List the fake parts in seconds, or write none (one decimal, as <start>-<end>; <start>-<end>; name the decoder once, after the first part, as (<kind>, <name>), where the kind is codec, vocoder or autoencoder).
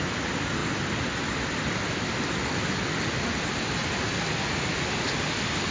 none